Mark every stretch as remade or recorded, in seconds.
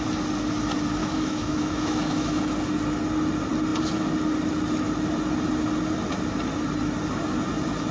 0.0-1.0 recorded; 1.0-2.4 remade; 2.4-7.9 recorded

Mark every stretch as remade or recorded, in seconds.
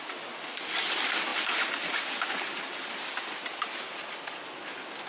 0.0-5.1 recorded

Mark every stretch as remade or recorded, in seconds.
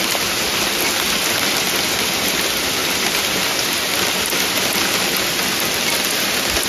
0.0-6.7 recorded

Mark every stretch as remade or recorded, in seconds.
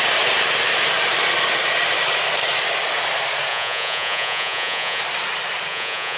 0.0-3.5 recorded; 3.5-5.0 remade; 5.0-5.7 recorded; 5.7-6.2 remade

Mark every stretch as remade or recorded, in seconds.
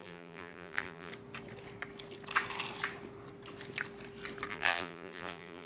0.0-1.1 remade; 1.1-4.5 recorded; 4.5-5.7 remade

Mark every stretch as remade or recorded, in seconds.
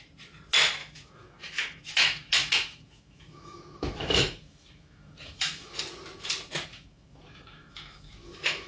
0.0-0.8 recorded; 0.8-5.8 remade; 5.8-6.7 recorded; 6.7-8.7 remade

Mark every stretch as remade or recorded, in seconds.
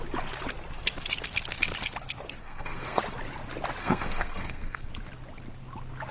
0.0-2.4 recorded; 2.4-3.0 remade; 3.0-3.8 recorded; 3.8-4.9 remade; 4.9-6.1 recorded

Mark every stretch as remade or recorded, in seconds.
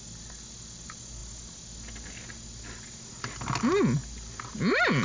0.0-5.0 recorded